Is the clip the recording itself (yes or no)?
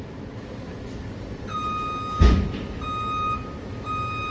yes